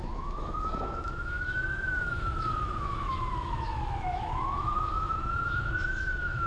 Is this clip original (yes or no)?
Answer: no